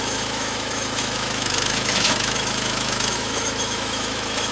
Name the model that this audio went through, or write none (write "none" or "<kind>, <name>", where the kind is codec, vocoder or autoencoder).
autoencoder, DAC-VAE